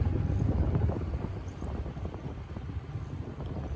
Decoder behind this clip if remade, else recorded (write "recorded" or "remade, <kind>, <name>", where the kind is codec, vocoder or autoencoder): recorded